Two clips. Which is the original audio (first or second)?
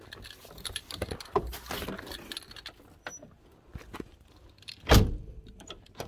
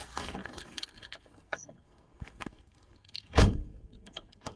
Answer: first